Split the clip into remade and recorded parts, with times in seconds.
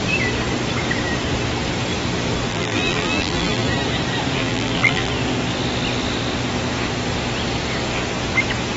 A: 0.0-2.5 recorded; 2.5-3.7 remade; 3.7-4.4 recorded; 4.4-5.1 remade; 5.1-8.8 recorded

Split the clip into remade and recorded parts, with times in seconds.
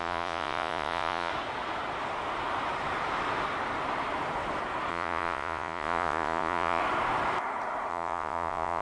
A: 0.0-1.3 remade; 1.3-4.9 recorded; 4.9-6.8 remade; 6.8-7.9 recorded; 7.9-8.8 remade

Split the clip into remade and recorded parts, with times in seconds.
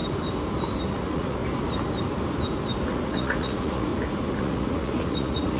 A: 0.0-0.9 recorded; 0.9-1.4 remade; 1.4-2.9 recorded; 2.9-3.9 remade; 3.9-4.4 recorded; 4.4-5.6 remade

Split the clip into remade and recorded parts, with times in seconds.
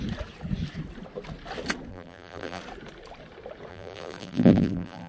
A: 0.0-1.9 recorded; 1.9-2.6 remade; 2.6-3.7 recorded; 3.7-5.1 remade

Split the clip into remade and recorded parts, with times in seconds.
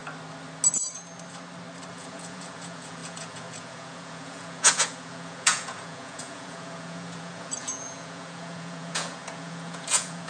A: 0.0-1.9 recorded; 1.9-10.3 remade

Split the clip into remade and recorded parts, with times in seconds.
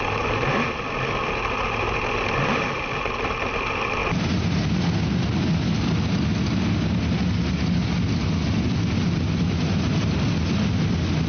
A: 0.0-11.3 recorded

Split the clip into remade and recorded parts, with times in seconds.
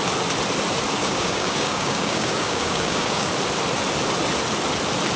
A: 0.0-1.0 recorded; 1.0-3.3 remade; 3.3-5.2 recorded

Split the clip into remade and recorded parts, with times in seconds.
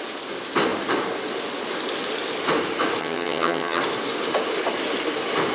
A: 0.0-3.0 recorded; 3.0-3.8 remade; 3.8-5.5 recorded